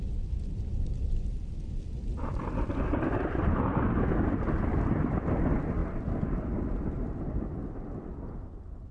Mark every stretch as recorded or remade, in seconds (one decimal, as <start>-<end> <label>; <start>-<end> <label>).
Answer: 0.0-8.9 recorded